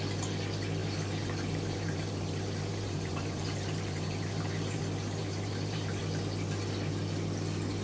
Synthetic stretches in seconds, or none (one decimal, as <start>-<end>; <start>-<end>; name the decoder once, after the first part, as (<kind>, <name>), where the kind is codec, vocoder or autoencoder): 0.8-4.8 (vocoder, BigVGAN v2); 5.2-6.0